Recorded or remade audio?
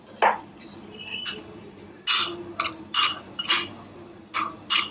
recorded